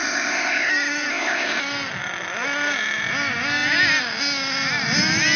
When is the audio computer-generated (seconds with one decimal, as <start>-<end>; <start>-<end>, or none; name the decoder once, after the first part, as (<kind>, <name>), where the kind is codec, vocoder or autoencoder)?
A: 0.0-0.7 (codec, ZipCodec); 1.1-1.6